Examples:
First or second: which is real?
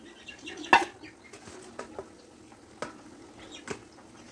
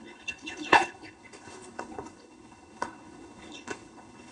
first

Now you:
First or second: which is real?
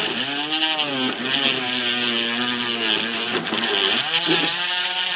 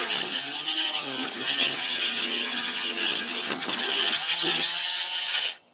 first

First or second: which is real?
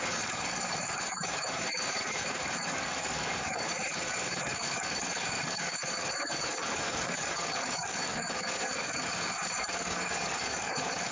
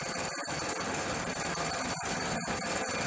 second